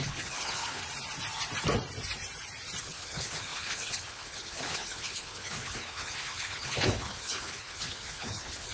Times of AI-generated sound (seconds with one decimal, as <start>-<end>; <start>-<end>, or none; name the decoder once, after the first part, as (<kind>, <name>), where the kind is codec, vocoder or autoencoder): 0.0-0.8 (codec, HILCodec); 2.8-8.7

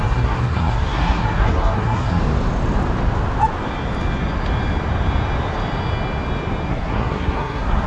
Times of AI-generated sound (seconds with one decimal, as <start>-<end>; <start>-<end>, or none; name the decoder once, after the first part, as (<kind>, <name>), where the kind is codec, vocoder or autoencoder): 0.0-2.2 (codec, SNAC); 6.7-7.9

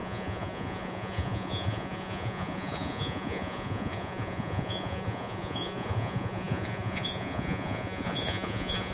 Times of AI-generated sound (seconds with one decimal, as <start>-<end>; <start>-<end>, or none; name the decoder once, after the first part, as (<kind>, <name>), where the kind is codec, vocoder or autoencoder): 0.0-8.9 (vocoder, Vocos)

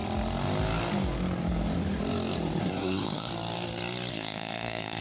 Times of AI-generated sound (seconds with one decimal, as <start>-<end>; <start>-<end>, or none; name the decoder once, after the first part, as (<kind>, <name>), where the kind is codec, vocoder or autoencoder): 2.6-3.3 (codec, SNAC); 4.1-5.0